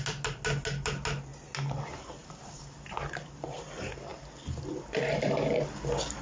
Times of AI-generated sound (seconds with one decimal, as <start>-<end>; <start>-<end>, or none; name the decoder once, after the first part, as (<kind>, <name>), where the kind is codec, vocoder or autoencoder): none